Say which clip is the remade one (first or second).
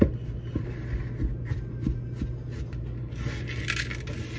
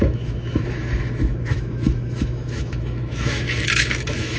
second